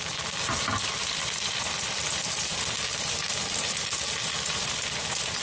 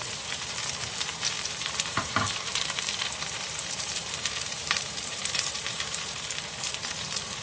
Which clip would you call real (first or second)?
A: first